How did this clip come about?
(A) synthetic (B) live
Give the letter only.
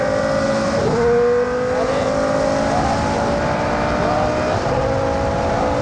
B